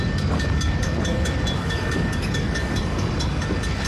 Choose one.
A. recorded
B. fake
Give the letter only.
B